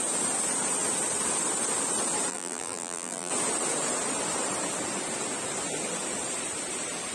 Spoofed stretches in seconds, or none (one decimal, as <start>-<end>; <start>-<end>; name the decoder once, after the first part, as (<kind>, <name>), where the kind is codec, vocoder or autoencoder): 2.3-3.3 (vocoder, BigVGAN v2)